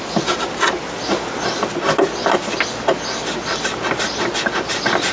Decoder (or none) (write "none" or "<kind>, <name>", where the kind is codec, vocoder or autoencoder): none